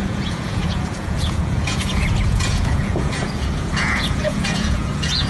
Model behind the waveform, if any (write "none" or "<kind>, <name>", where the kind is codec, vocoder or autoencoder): vocoder, Vocos